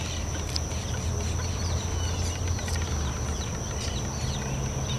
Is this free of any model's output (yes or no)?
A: yes